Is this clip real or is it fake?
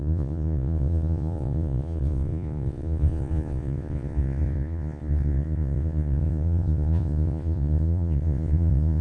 fake